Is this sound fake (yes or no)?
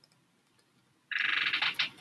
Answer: no